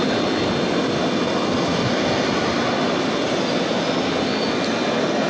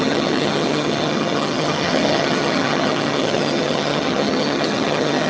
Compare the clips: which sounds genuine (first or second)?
first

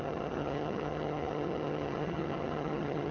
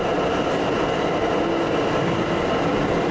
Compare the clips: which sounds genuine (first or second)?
second